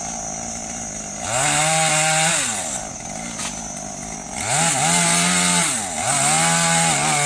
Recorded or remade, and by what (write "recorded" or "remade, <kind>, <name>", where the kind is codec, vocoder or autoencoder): recorded